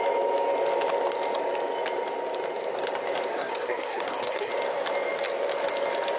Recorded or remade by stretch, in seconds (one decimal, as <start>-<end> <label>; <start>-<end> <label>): 0.0-3.3 recorded; 3.3-4.5 remade; 4.5-6.2 recorded